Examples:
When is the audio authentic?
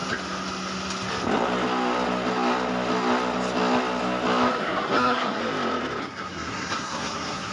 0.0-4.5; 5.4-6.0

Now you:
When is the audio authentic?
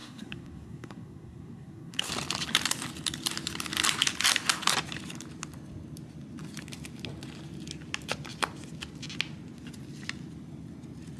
2.1-11.2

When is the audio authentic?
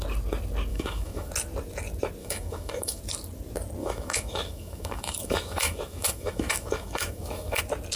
0.0-0.7; 1.3-2.2; 3.0-3.8; 7.6-8.0